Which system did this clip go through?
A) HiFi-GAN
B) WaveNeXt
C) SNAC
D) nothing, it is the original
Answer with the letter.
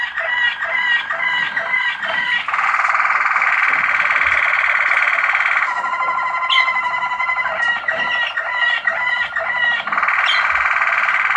D